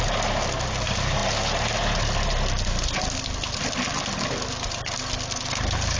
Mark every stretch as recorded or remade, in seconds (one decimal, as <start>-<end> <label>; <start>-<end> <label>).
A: 0.0-6.0 recorded